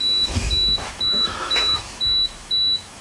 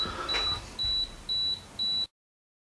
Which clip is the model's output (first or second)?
first